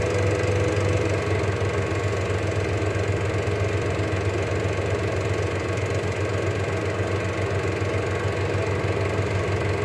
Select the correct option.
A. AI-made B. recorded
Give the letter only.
B